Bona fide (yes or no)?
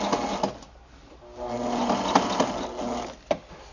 yes